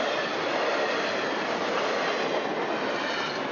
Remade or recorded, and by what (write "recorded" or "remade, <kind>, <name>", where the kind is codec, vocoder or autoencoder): recorded